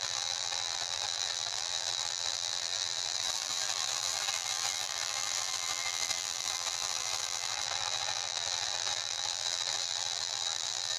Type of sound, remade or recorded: remade